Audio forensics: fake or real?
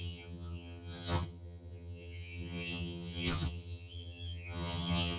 fake